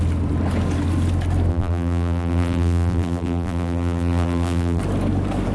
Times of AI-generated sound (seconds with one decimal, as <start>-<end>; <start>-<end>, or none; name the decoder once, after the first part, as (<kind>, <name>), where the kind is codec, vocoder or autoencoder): 1.5-4.8 (vocoder, BigVGAN v2)